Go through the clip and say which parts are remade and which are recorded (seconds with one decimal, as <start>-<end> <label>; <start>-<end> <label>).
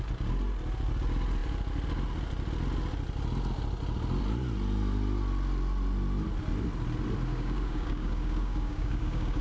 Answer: 0.0-7.3 recorded; 7.3-9.4 remade